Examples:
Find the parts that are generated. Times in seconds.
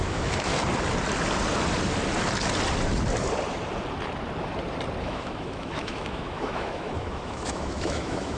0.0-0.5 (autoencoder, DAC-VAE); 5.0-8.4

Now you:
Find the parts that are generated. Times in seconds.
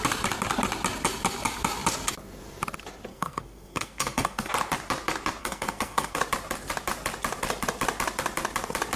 3.1-4.5 (codec, SNAC); 5.4-6.2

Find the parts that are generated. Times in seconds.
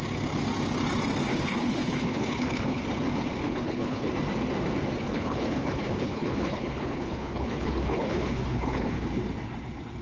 1.3-2.8 (codec, HILCodec); 3.4-4.1; 5.0-9.1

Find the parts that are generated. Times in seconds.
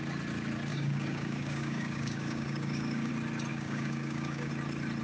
0.7-3.1 (codec, DAC); 3.5-4.5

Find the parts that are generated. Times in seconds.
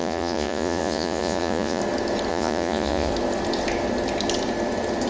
0.0-1.8 (vocoder, Vocos); 2.3-3.1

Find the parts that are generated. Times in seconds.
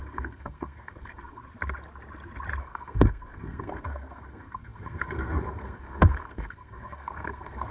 0.0-1.4 (codec, SNAC); 2.6-7.7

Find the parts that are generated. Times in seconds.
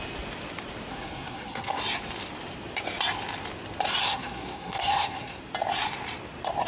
0.9-1.8 (codec, SNAC); 4.0-5.4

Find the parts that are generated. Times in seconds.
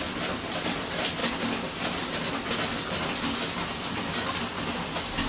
none